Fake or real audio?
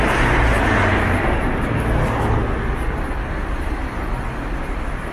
real